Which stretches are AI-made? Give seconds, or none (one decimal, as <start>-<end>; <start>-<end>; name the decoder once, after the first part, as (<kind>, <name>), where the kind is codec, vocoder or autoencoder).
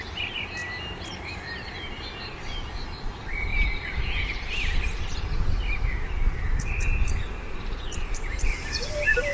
0.0-0.6 (vocoder, BigVGAN v2); 2.9-9.3